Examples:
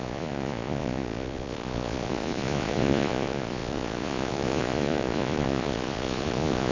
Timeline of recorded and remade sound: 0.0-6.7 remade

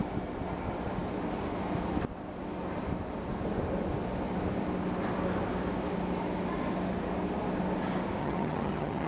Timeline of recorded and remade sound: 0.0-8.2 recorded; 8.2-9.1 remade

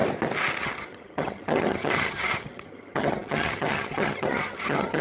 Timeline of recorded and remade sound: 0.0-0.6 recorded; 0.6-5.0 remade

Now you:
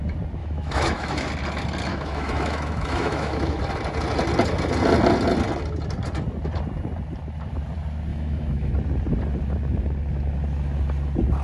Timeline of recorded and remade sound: 0.0-0.4 recorded; 0.4-1.3 remade; 1.3-1.9 recorded; 1.9-3.6 remade; 3.6-8.1 recorded; 8.1-8.7 remade; 8.7-11.4 recorded

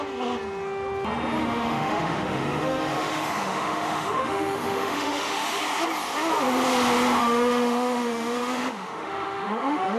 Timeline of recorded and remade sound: 0.0-1.4 recorded; 1.4-5.6 remade; 5.6-7.2 recorded; 7.2-10.0 remade